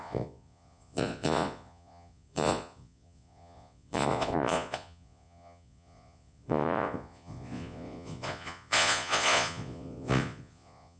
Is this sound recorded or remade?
remade